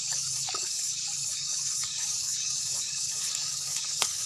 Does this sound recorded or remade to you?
remade